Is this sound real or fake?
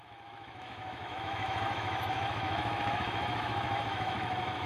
fake